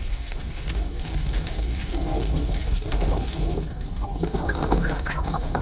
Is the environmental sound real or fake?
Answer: fake